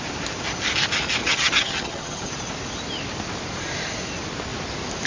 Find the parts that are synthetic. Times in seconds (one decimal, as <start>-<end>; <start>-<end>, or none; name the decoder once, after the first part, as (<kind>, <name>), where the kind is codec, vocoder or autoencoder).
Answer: 1.2-2.3 (vocoder, HiFi-GAN)